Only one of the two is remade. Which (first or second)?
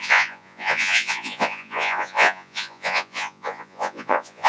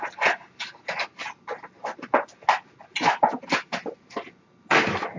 first